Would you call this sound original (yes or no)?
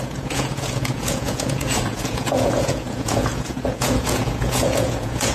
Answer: no